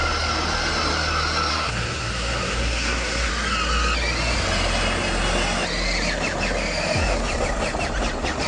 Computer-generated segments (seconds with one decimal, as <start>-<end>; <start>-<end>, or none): 1.5-3.3